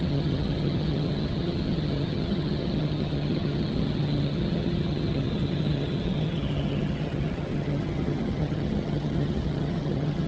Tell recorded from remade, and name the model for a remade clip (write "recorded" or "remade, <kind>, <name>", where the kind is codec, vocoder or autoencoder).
remade, vocoder, HiFi-GAN